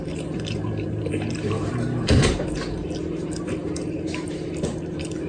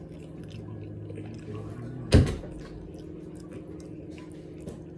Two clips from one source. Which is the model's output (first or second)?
first